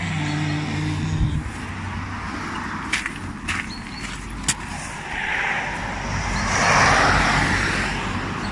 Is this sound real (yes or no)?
yes